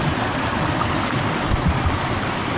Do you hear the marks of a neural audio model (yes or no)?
no